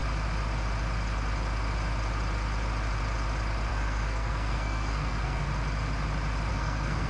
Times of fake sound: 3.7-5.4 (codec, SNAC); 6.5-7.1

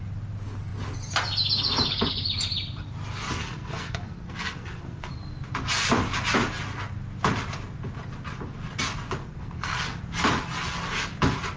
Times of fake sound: 3.4-5.1 (codec, SNAC); 9.2-10.0

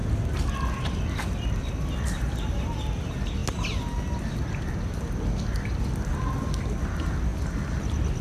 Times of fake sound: none

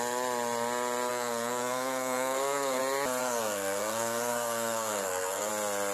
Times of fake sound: 1.1-2.8 (codec, SNAC); 3.2-5.5

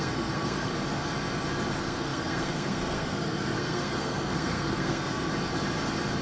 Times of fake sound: 0.0-0.7 (codec, SNAC); 1.7-5.3

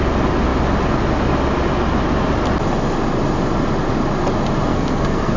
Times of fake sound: 4.7-5.4 (codec, SNAC)

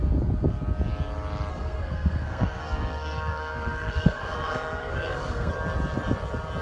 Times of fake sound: 1.5-5.5 (codec, SNAC)

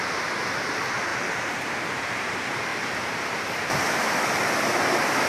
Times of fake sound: none